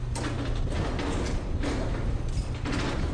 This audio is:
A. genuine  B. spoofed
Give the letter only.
A